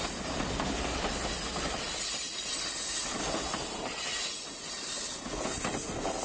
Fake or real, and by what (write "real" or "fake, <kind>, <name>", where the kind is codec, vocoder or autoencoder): real